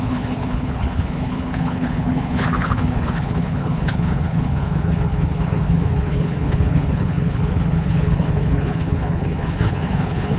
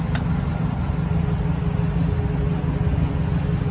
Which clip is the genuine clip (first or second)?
second